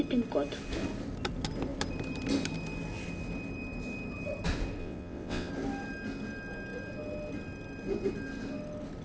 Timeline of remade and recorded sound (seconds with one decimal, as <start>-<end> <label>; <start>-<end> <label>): 0.0-4.8 recorded; 4.8-5.5 remade; 5.5-9.0 recorded